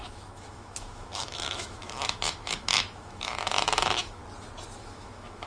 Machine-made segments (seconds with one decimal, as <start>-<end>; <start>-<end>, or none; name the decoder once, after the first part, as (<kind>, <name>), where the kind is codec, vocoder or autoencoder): 0.0-4.2 (autoencoder, DAC-VAE); 4.8-5.5